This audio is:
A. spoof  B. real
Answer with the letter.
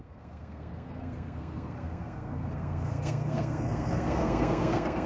A